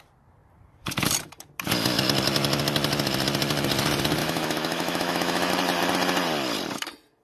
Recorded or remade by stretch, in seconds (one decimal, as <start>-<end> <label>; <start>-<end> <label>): 0.0-4.2 recorded; 4.2-5.5 remade; 5.5-7.2 recorded